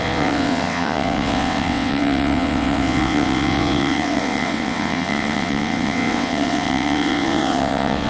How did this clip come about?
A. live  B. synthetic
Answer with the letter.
B